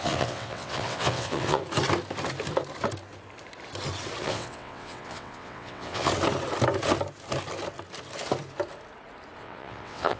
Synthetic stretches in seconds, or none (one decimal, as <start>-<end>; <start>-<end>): 0.0-1.6; 4.2-6.1; 9.4-10.2